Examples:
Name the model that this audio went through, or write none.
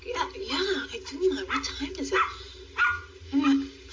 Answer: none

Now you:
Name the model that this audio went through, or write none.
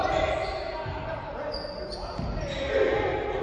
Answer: none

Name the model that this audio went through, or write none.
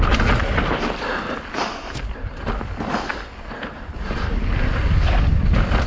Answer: none